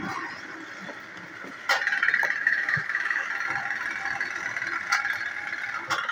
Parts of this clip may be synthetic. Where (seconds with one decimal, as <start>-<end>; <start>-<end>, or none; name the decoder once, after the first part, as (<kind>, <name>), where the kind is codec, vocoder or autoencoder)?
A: 2.4-3.3 (autoencoder, DAC-VAE)

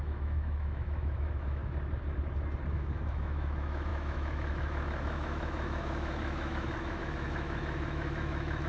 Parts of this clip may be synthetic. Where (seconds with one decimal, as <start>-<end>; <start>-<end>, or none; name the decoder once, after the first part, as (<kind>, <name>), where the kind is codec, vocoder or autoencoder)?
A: 0.0-1.6 (autoencoder, DAC-VAE); 2.7-8.7